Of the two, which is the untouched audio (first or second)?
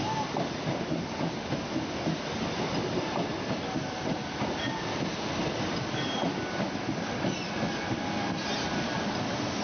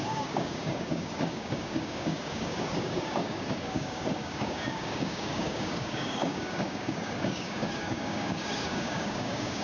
first